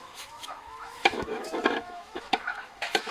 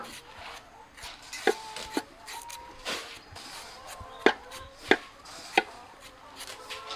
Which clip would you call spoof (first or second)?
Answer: first